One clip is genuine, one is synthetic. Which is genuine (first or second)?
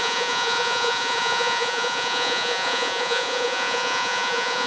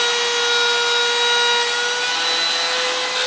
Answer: second